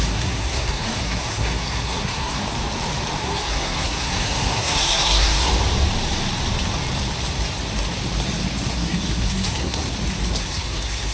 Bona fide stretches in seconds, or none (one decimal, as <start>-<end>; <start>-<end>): 2.4-3.2; 5.5-8.7; 9.8-10.4